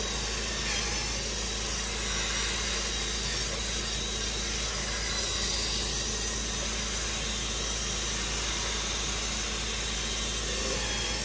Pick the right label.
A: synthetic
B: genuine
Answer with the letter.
B